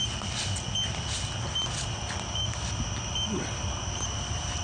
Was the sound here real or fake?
real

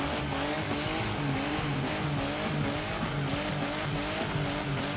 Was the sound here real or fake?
real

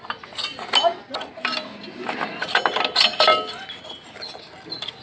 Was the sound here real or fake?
real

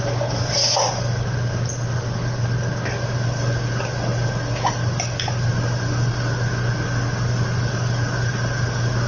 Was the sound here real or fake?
real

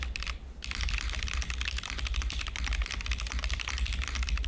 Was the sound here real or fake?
real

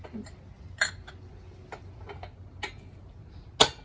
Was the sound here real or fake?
real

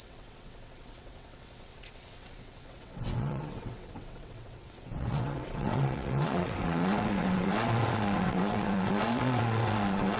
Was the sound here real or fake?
fake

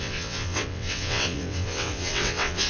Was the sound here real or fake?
fake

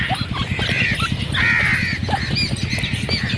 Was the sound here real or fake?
real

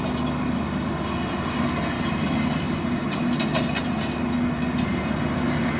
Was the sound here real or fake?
real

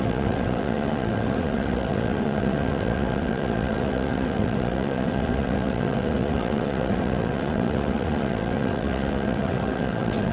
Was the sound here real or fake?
fake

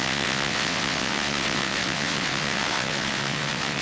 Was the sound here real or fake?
fake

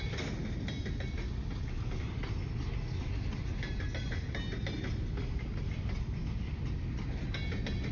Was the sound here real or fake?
real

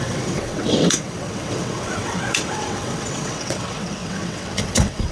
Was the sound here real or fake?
fake